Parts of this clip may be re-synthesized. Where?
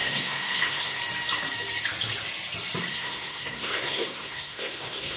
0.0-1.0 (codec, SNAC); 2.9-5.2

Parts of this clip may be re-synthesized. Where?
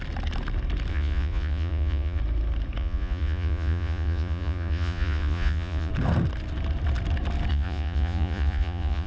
0.9-2.2 (vocoder, Vocos); 2.8-5.9; 7.5-9.1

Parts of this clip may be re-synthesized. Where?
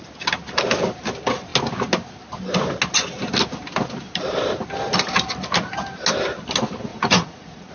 6.9-7.7 (vocoder, Vocos)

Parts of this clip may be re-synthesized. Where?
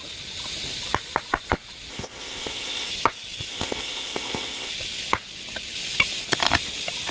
1.9-2.9 (codec, ZipCodec); 3.5-4.7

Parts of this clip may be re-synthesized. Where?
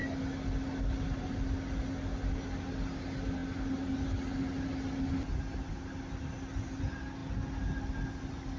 none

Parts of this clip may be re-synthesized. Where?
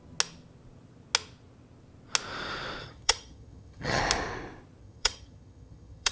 2.8-4.0 (vocoder, HiFi-GAN); 4.8-6.1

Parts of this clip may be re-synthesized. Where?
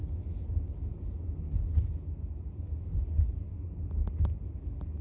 none